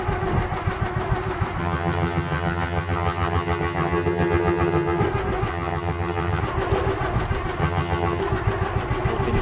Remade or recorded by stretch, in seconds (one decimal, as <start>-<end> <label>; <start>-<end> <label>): 0.0-1.6 recorded; 1.6-5.0 remade; 5.0-5.5 recorded; 5.5-6.4 remade; 6.4-7.6 recorded; 7.6-8.2 remade; 8.2-9.4 recorded